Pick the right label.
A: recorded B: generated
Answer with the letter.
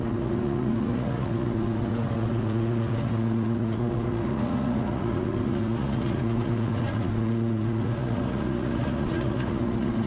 B